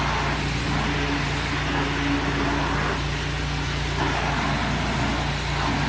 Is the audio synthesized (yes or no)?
no